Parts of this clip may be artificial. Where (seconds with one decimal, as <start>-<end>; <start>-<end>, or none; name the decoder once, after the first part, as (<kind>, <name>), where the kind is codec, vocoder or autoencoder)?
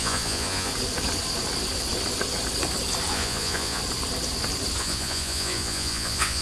0.0-0.7 (vocoder, Vocos); 3.1-3.8; 4.8-6.4